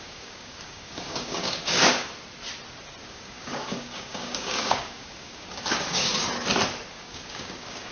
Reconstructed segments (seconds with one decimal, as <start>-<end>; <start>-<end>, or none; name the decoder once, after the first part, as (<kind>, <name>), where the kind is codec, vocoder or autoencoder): 0.0-2.1 (codec, DAC); 3.1-6.1; 6.9-7.9